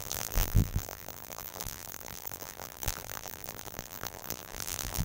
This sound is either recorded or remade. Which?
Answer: remade